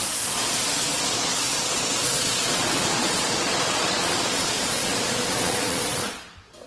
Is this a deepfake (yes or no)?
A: yes